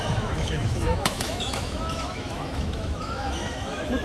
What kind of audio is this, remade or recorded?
remade